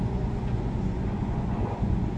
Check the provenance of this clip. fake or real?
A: fake